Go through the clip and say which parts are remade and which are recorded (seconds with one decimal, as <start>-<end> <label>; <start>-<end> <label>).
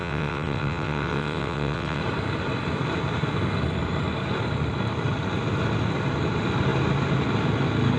0.0-2.0 remade; 2.0-8.0 recorded